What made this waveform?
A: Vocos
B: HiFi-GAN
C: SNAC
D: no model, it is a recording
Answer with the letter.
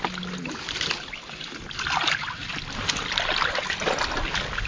D